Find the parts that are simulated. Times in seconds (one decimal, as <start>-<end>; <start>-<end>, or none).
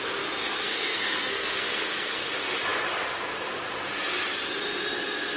0.4-2.3